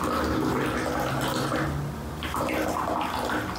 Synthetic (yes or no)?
no